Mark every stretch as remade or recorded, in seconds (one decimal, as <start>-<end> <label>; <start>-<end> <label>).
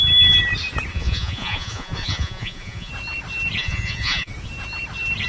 0.0-0.9 recorded; 0.9-2.9 remade; 2.9-3.6 recorded; 3.6-4.3 remade; 4.3-5.3 recorded